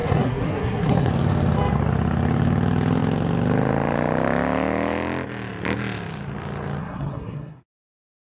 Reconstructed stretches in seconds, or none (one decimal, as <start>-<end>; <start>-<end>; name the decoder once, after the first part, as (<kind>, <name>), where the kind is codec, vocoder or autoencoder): 0.0-1.1 (codec, SNAC); 6.8-7.8